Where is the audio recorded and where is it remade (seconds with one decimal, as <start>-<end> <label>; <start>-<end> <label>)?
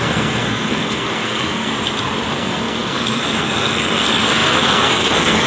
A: 0.0-1.7 remade; 1.7-2.3 recorded; 2.3-5.5 remade